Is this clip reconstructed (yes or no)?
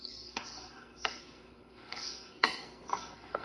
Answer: yes